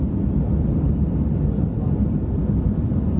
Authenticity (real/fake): real